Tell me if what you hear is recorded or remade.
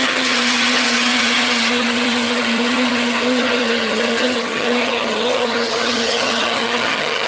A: remade